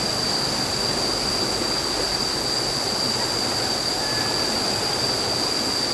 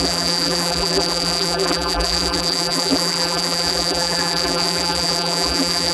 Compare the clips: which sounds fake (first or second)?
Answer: second